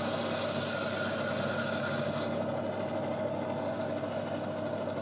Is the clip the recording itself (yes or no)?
yes